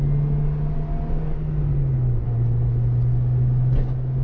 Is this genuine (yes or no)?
yes